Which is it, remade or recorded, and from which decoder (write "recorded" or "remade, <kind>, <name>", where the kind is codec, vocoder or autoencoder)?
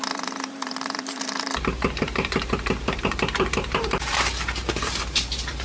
remade, vocoder, BigVGAN v2